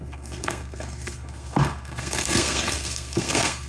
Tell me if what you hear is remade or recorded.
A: remade